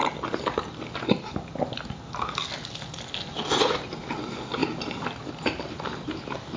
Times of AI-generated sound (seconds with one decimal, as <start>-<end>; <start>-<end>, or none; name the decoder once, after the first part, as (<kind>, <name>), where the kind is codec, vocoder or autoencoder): none